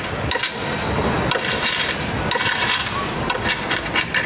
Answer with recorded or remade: recorded